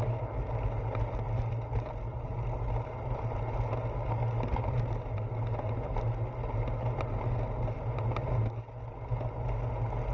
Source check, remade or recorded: recorded